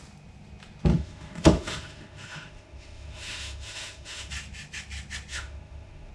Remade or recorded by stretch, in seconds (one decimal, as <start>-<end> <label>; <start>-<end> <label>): 0.0-0.9 recorded; 0.9-4.3 remade; 4.3-5.3 recorded; 5.3-6.1 remade